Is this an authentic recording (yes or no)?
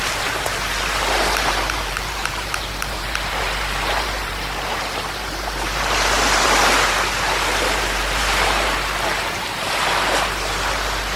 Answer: no